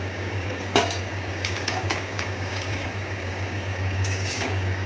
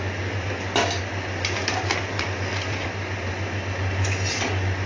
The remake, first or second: first